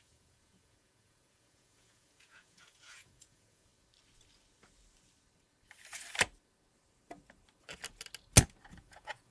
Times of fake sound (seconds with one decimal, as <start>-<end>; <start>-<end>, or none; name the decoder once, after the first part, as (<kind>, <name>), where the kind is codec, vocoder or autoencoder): 0.0-3.7 (vocoder, Vocos); 8.7-9.3